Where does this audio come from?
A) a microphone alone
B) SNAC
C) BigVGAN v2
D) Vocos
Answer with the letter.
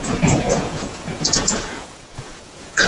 D